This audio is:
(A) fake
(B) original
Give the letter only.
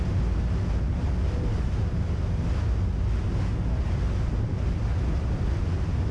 B